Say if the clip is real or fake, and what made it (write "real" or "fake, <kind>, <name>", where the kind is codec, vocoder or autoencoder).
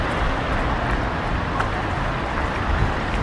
real